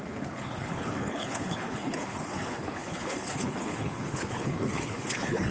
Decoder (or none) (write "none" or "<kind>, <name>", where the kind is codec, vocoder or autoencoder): codec, HILCodec